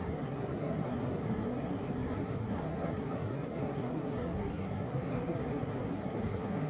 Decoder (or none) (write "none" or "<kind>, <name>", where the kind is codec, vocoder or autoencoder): codec, SNAC